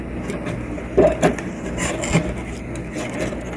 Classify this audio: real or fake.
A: real